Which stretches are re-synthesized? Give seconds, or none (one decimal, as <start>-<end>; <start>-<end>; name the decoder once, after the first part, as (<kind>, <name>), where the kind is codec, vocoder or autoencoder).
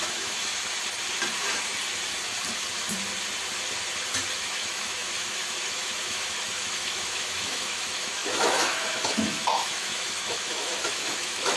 0.0-0.5 (autoencoder, DAC-VAE); 4.4-11.6